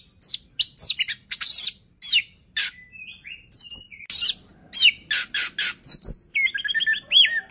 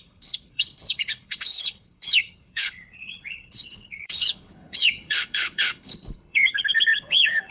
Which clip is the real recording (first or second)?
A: first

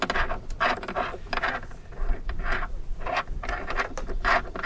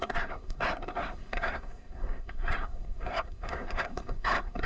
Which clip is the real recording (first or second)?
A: first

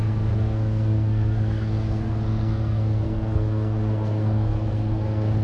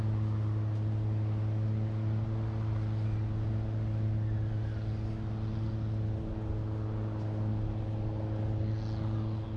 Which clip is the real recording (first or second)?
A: second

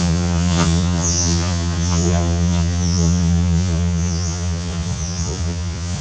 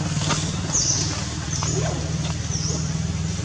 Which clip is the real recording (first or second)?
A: second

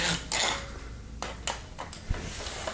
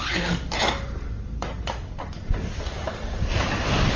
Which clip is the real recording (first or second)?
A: first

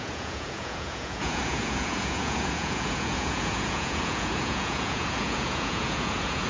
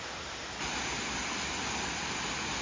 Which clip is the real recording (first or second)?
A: second